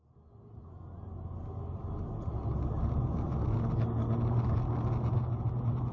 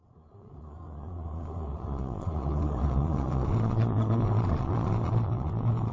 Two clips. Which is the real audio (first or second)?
first